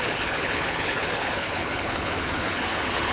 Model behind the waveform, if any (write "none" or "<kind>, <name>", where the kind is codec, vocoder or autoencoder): codec, HILCodec